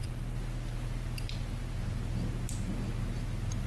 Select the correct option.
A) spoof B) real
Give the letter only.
B